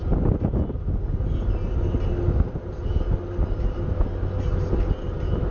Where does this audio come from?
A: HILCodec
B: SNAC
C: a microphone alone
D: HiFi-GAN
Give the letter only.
C